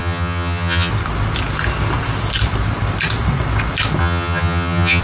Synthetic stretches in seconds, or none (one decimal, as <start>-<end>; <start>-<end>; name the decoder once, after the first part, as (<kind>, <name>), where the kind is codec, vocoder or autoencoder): 0.0-0.9 (vocoder, HiFi-GAN); 4.0-5.0